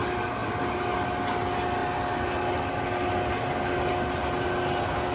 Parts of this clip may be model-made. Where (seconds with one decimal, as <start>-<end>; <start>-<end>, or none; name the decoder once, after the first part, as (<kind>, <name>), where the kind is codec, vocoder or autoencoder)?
none

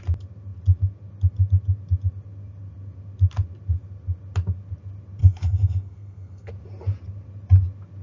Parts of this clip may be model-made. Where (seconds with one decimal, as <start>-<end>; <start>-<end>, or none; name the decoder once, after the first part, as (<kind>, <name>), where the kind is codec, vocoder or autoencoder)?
5.2-6.5 (codec, SNAC)

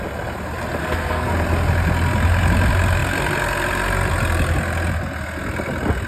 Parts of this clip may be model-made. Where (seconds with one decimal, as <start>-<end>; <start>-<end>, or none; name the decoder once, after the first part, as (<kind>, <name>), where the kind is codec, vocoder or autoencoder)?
0.8-1.3 (codec, SNAC)